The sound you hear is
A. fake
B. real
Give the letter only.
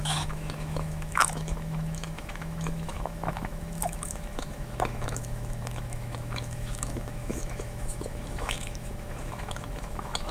A